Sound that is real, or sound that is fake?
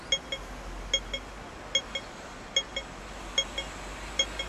real